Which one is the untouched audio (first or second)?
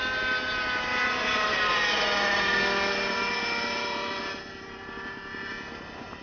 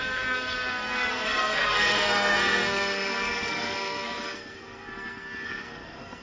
first